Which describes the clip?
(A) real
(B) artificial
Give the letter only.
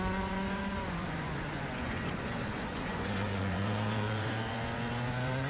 B